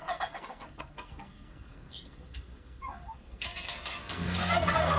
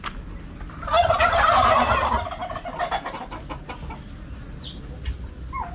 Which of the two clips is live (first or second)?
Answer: second